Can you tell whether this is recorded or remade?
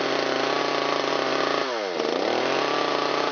recorded